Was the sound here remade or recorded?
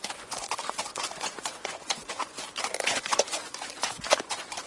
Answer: remade